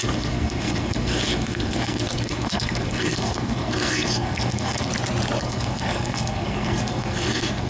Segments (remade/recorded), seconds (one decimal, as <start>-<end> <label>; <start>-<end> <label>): 0.0-4.9 remade; 4.9-5.4 recorded; 5.4-7.7 remade